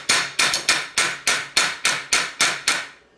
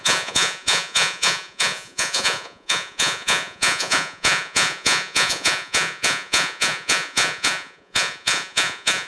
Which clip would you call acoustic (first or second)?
first